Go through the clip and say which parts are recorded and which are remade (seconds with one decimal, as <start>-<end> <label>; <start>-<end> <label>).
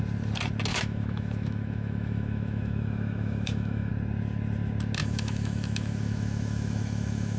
0.0-0.7 recorded; 0.7-3.9 remade; 3.9-5.0 recorded; 5.0-7.4 remade